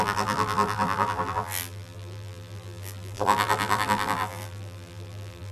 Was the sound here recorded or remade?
remade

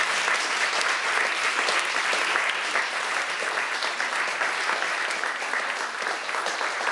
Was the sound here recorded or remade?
recorded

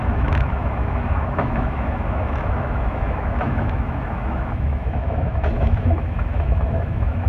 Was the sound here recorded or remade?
remade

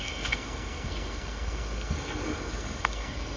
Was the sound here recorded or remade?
remade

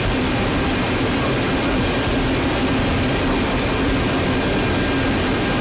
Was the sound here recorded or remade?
recorded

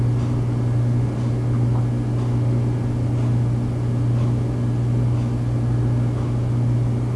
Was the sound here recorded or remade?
recorded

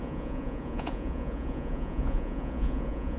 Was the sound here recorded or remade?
remade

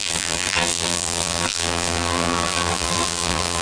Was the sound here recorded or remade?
remade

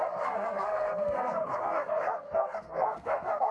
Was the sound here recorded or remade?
remade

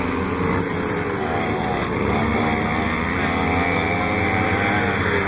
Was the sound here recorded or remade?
recorded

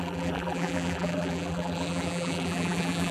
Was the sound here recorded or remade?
remade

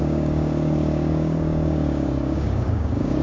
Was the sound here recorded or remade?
remade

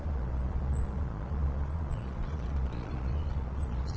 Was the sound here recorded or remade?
remade